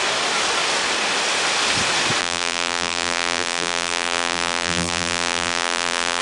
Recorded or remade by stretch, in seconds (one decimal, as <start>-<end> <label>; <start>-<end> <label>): 0.0-2.2 recorded; 2.2-6.2 remade